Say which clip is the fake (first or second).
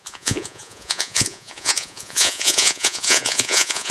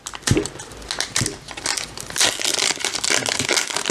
first